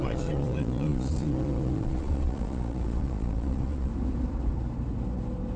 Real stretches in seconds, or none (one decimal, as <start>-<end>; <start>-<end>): 3.9-5.6